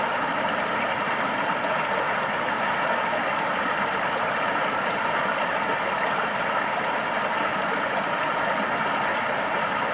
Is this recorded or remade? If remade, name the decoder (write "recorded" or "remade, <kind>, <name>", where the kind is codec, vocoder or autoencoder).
recorded